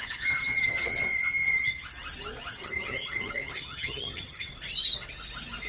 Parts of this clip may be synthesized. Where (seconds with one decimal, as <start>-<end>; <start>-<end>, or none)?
0.0-1.7; 2.5-4.5